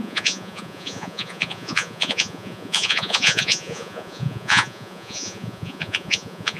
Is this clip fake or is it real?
fake